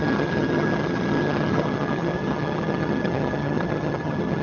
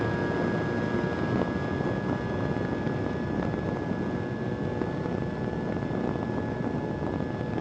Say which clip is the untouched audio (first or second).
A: second